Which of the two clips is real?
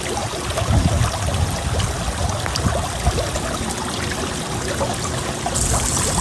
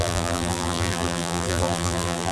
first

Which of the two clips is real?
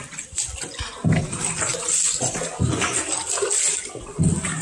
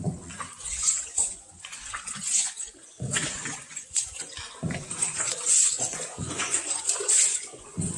first